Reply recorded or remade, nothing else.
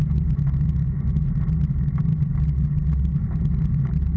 recorded